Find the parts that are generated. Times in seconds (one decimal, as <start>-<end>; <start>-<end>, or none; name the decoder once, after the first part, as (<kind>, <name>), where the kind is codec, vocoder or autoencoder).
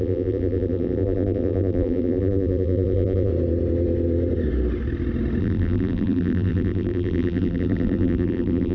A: 0.0-3.3 (vocoder, BigVGAN v2); 5.4-8.7